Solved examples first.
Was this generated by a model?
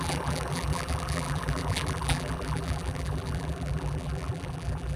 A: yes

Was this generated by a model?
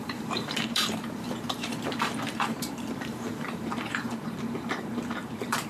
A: yes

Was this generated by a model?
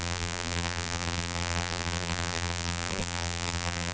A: yes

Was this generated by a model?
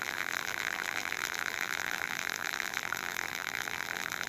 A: yes